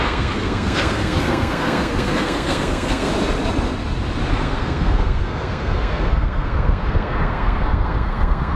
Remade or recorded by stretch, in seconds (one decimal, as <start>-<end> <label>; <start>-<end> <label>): 0.0-3.1 remade; 3.1-4.3 recorded; 4.3-8.6 remade